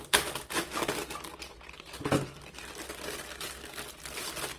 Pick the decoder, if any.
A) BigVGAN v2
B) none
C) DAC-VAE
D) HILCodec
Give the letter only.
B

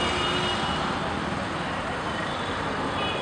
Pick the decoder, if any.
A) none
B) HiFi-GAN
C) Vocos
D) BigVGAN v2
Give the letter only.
A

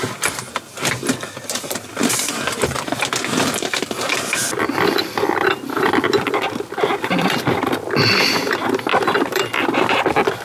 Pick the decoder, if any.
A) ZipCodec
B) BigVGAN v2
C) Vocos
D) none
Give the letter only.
B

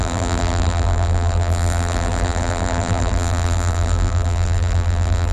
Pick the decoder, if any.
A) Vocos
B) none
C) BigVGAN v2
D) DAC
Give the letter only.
C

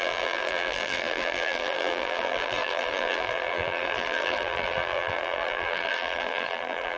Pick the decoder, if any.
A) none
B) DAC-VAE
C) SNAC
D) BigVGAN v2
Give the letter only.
D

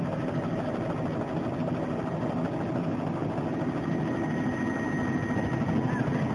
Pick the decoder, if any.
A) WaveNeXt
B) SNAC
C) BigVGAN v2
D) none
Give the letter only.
D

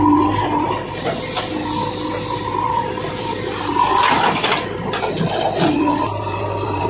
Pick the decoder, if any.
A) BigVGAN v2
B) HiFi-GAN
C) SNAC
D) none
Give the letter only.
D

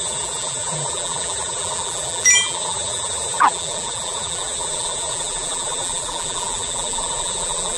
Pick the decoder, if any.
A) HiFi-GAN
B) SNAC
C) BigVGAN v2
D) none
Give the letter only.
C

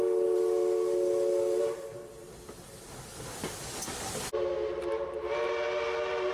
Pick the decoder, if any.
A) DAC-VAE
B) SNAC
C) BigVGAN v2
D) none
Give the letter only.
D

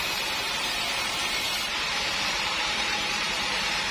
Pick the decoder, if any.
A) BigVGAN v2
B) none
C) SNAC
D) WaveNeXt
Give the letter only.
A